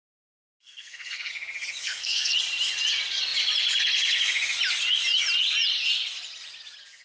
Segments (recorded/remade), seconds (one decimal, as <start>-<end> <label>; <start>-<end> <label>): 0.0-1.3 remade; 1.3-1.8 recorded; 1.8-2.3 remade; 2.3-7.0 recorded